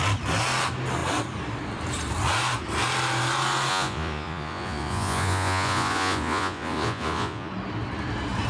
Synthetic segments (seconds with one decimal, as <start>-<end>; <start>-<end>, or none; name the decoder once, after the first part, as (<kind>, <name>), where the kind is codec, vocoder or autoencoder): 3.7-7.5 (vocoder, Vocos)